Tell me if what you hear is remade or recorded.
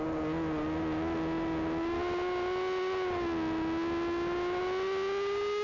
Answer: recorded